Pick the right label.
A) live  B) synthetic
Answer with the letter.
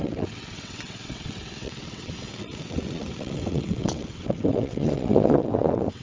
B